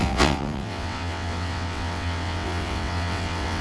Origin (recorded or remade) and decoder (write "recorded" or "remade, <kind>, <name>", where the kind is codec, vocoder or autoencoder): remade, vocoder, WaveNeXt